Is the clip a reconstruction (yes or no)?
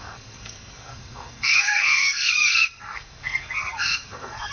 yes